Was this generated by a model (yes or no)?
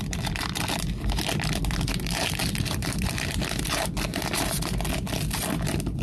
yes